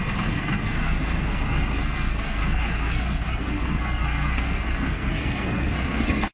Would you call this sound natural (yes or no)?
no